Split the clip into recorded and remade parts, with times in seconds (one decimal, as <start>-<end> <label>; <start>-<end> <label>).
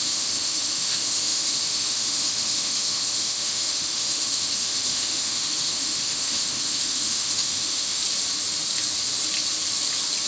0.0-8.0 remade; 8.0-10.3 recorded